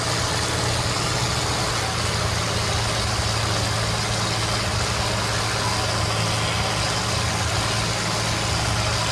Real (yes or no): yes